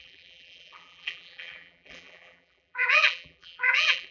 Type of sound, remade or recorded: remade